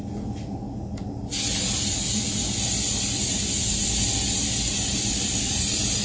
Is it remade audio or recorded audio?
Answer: recorded